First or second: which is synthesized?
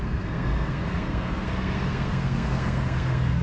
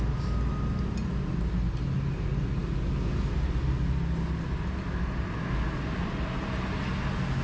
first